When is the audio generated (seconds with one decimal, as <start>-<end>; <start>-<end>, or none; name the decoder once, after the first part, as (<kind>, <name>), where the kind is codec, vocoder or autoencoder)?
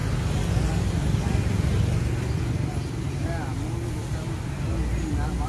none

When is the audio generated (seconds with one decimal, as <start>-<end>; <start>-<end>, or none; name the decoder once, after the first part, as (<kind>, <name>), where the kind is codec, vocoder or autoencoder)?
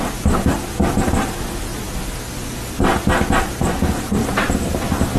4.2-5.2 (vocoder, BigVGAN v2)